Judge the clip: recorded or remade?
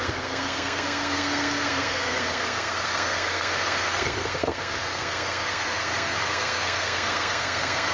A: remade